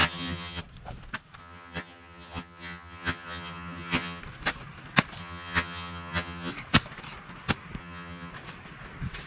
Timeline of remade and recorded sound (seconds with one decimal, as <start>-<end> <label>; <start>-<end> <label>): 0.0-0.6 remade; 0.6-1.4 recorded; 1.4-4.2 remade; 4.2-5.2 recorded; 5.2-6.5 remade; 6.5-7.8 recorded; 7.8-8.3 remade; 8.3-9.3 recorded

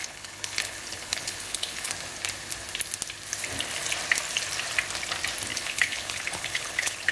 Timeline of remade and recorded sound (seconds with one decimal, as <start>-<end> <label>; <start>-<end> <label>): 0.0-1.9 remade; 1.9-5.5 recorded; 5.5-7.1 remade

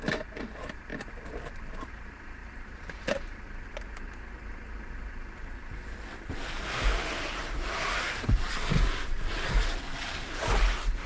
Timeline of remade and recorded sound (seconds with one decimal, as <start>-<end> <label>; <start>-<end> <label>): 0.0-0.9 recorded; 0.9-1.9 remade; 1.9-2.4 recorded; 2.4-4.2 remade; 4.2-6.9 recorded; 6.9-9.9 remade; 9.9-11.1 recorded